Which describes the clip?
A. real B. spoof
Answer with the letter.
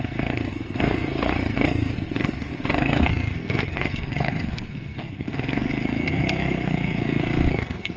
B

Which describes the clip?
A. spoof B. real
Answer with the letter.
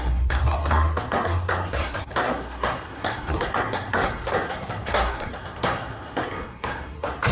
A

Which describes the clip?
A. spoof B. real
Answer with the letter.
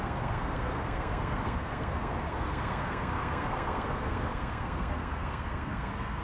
A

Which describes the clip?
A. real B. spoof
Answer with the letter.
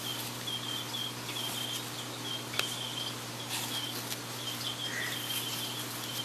A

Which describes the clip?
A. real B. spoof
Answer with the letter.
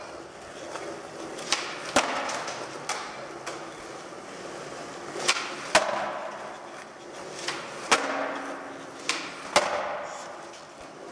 A